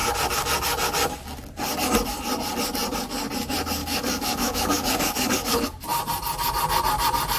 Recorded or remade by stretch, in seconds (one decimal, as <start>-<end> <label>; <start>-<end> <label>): 0.0-3.8 recorded; 3.8-5.6 remade; 5.6-7.4 recorded